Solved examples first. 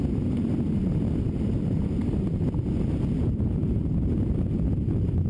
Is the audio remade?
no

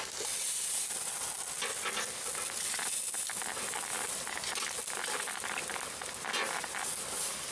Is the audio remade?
no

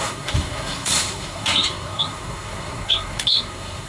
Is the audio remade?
yes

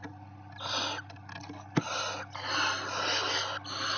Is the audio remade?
no